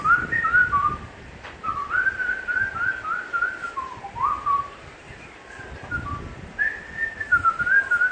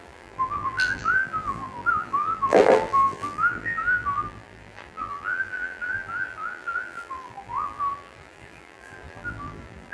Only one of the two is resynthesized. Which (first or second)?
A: second